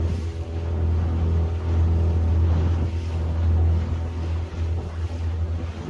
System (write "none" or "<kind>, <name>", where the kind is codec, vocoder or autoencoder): none